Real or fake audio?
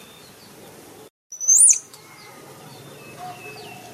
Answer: real